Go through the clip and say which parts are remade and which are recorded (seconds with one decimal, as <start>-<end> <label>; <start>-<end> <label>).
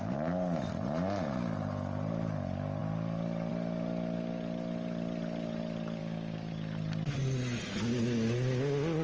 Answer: 0.0-6.0 recorded; 6.0-6.5 remade; 6.5-9.0 recorded